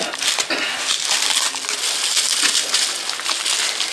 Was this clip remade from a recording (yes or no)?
no